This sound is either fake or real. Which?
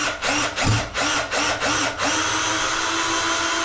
real